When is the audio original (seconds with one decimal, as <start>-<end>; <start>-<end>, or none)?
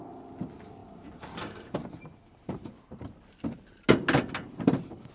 0.0-0.8; 3.4-5.1